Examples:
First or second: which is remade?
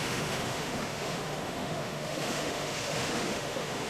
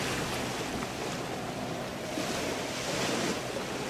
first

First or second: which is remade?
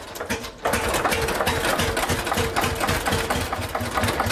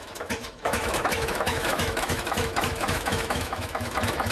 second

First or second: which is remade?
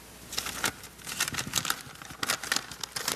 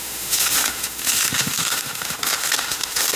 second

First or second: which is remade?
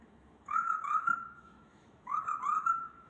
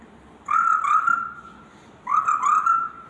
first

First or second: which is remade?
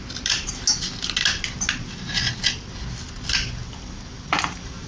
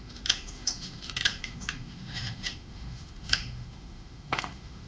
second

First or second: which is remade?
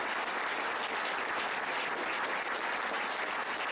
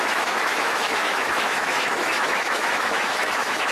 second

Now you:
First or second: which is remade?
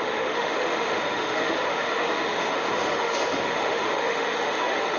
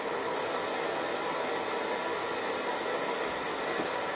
first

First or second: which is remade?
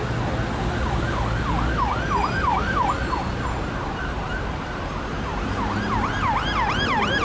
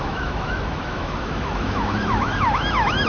second